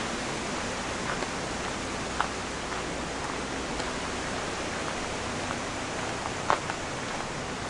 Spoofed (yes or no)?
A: no